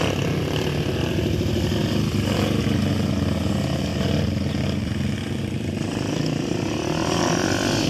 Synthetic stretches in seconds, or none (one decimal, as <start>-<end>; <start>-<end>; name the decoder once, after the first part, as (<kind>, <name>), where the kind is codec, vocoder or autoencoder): 3.9-6.7 (vocoder, BigVGAN v2)